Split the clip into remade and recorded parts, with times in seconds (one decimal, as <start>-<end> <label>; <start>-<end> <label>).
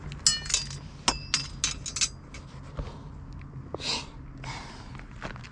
0.0-5.5 recorded